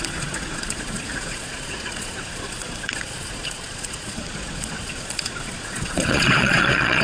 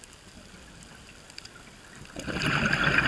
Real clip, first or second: second